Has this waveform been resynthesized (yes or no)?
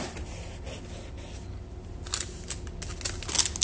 no